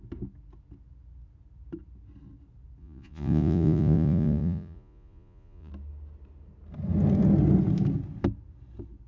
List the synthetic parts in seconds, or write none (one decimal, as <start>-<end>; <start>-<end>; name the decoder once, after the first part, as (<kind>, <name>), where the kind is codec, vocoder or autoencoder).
2.8-5.7 (vocoder, Vocos)